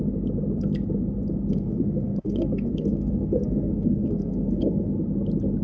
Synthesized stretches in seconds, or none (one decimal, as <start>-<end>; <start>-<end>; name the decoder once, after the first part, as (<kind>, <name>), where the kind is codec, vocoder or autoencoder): 1.5-4.9 (codec, SNAC)